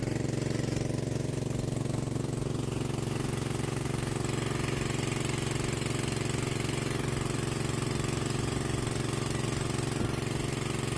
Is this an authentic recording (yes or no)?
yes